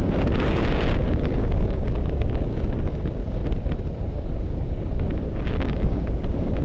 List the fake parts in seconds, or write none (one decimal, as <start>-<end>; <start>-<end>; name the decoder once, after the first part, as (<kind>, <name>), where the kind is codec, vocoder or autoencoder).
0.0-3.4 (codec, DAC); 4.1-6.6